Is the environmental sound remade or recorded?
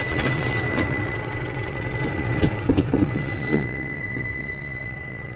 remade